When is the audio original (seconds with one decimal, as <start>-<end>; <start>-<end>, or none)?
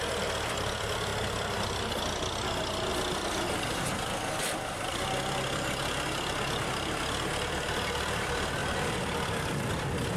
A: 0.0-8.6; 9.7-10.2